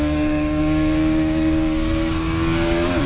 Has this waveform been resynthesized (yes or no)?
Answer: yes